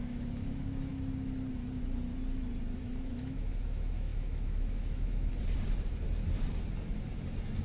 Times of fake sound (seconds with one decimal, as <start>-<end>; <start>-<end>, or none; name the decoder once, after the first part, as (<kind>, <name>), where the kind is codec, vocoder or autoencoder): 0.0-0.9 (autoencoder, DAC-VAE); 2.7-5.3